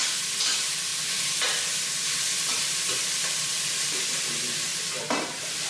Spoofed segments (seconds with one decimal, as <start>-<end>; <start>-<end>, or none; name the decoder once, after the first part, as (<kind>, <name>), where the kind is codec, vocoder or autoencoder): 0.9-4.3 (vocoder, BigVGAN v2); 4.7-5.7